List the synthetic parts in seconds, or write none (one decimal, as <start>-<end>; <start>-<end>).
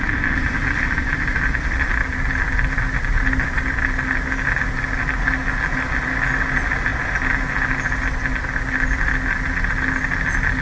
none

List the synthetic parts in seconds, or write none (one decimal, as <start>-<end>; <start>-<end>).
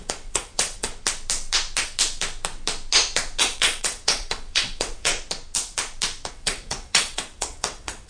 0.0-0.9; 3.4-5.1; 6.3-8.1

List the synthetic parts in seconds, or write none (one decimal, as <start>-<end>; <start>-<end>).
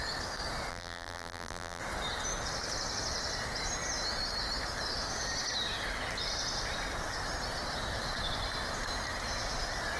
0.7-1.8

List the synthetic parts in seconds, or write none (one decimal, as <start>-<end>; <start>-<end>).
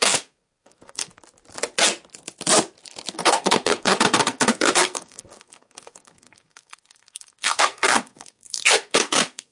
0.0-1.1; 3.1-9.5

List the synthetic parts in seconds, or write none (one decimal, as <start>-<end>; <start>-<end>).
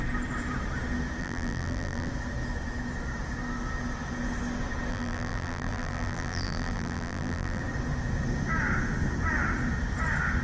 1.2-2.1; 4.9-7.6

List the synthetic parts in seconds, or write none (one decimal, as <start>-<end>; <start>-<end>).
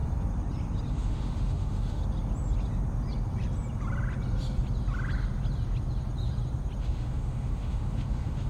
0.9-2.0; 6.8-8.5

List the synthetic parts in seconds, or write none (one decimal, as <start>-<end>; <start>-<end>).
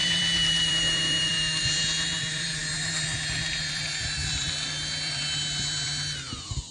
0.0-6.7